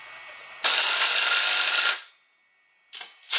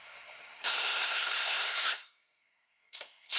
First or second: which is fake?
second